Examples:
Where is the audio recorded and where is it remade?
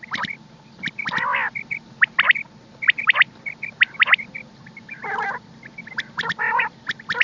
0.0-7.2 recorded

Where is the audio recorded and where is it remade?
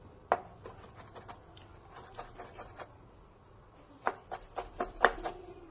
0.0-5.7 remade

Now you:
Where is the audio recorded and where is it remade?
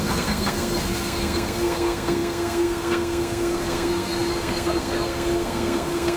0.0-6.2 remade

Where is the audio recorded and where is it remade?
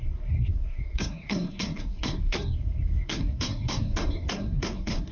0.0-5.1 remade